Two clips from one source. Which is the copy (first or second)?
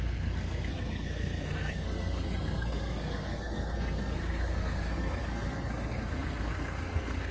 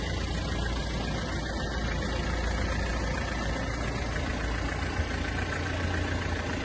first